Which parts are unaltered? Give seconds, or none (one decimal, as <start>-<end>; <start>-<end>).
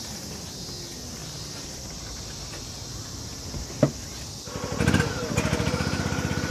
0.0-6.5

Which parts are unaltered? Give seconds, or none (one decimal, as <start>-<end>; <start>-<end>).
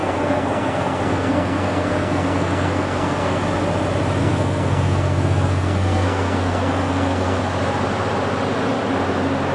3.4-4.2; 7.4-9.5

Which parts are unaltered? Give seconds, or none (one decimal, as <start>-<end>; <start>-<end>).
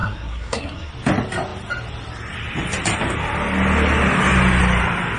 0.9-5.2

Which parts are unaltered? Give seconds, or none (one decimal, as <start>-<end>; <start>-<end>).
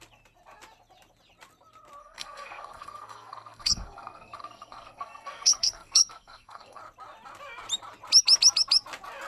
0.0-2.0; 6.8-9.3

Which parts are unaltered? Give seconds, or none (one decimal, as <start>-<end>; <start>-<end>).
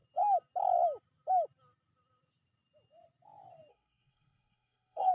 0.0-3.7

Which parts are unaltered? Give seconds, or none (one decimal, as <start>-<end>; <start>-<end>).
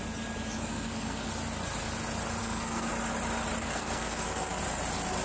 0.0-0.7; 1.3-2.4; 2.9-3.6; 4.6-5.2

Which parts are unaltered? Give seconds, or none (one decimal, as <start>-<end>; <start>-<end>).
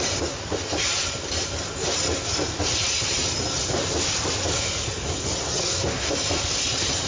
0.0-5.6; 6.1-7.1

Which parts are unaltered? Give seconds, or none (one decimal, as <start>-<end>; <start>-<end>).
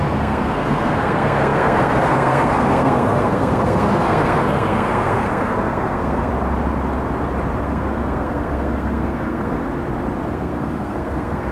6.3-7.6; 9.6-10.3